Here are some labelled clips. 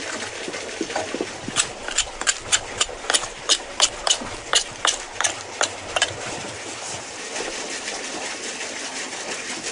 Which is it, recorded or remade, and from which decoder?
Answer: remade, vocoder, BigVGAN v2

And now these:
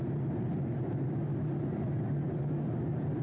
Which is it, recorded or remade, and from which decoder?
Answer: recorded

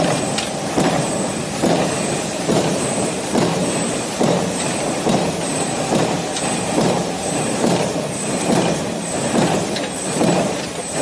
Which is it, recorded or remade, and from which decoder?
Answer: remade, vocoder, BigVGAN v2